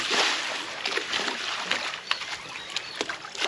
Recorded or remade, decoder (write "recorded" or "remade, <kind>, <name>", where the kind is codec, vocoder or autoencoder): recorded